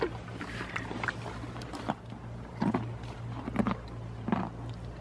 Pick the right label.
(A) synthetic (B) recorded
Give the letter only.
B